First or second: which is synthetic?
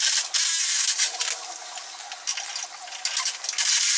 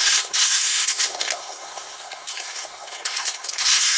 second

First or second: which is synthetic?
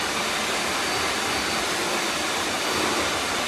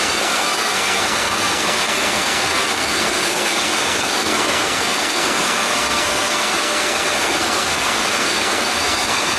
second